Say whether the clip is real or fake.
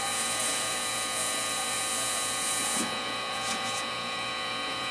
fake